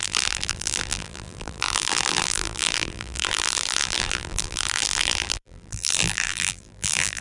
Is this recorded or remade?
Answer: remade